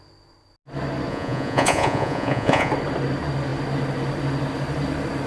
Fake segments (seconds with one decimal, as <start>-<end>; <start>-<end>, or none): 1.1-2.7